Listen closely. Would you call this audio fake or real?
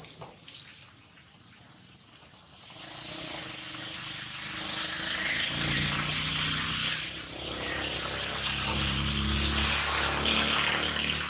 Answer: real